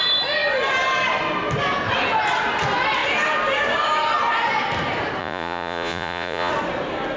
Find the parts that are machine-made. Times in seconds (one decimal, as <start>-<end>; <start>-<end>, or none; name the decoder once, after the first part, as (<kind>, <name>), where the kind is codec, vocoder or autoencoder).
5.2-6.5 (vocoder, Vocos)